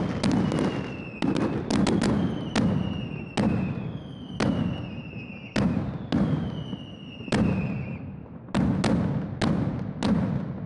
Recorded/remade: recorded